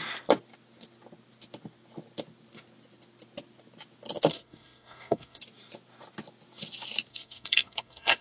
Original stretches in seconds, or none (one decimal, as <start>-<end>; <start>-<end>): 0.0-4.3; 5.4-7.1